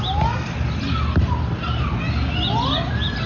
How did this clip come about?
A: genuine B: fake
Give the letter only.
A